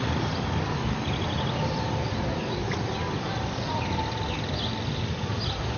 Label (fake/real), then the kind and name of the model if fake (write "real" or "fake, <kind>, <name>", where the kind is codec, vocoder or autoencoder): real